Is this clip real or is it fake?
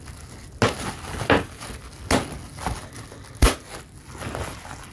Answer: real